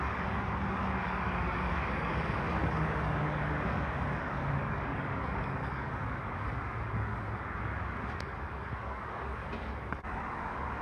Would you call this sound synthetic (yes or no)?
yes